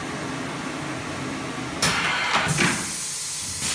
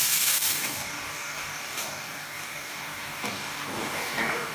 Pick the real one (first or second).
first